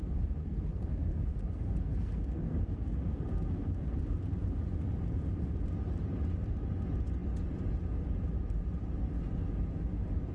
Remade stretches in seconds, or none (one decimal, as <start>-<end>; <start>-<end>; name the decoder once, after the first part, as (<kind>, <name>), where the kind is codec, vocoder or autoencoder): 0.4-4.4 (codec, SNAC)